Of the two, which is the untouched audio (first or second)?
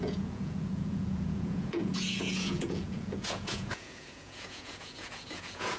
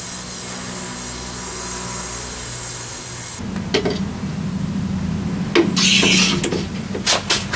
second